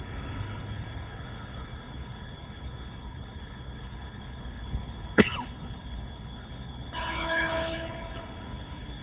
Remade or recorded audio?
remade